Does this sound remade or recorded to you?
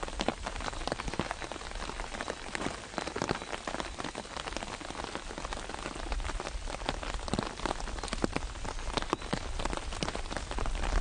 recorded